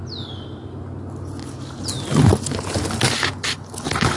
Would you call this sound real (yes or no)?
yes